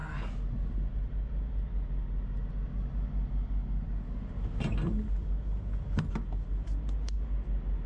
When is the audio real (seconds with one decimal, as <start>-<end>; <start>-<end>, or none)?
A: 0.0-7.9